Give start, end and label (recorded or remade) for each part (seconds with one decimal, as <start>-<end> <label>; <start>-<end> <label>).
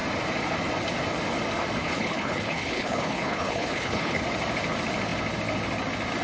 0.0-1.8 recorded; 1.8-4.2 remade; 4.2-6.2 recorded